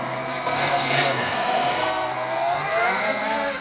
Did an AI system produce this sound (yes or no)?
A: yes